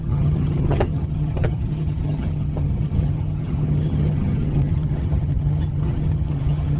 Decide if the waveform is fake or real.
fake